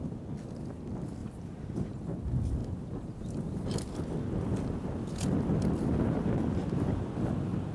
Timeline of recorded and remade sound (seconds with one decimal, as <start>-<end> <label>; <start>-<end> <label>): 0.0-1.2 recorded; 1.2-1.8 remade; 1.8-7.7 recorded

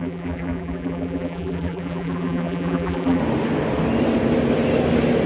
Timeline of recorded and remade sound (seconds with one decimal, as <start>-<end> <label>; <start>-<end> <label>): 0.0-3.2 remade; 3.2-5.3 recorded